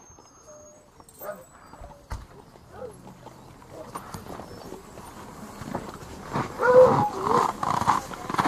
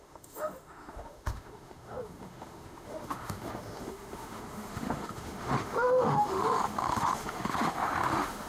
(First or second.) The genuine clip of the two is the first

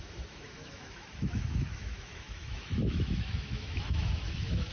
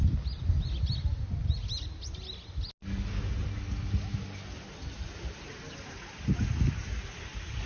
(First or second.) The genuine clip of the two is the second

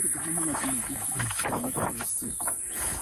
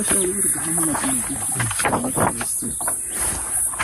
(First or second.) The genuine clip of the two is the second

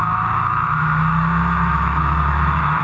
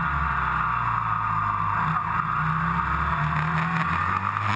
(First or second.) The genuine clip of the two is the second